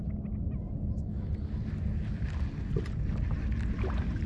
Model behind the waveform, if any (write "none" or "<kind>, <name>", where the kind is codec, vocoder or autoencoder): none